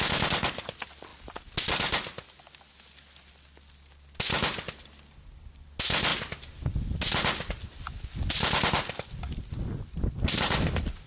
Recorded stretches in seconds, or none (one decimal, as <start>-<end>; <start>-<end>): 0.0-11.1